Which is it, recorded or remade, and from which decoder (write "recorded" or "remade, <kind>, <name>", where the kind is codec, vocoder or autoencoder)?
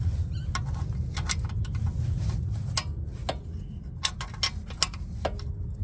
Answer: recorded